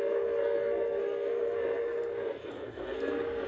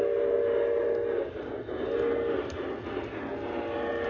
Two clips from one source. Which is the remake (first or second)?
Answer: first